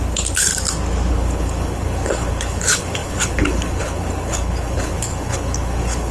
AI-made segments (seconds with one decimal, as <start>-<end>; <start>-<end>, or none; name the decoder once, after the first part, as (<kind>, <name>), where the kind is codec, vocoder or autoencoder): 0.0-0.5 (codec, HILCodec); 1.1-6.1